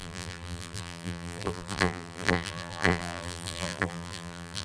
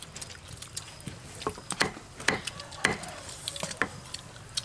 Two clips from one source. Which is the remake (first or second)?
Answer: first